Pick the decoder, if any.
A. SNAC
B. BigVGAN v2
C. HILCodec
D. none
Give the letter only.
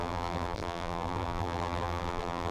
B